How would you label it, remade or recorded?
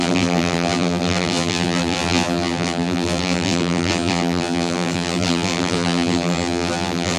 remade